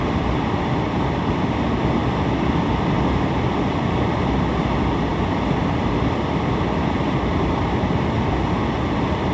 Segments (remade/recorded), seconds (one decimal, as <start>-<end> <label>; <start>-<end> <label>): 0.0-9.3 recorded